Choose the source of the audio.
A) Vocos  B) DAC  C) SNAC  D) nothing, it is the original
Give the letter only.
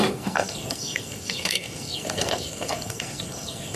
C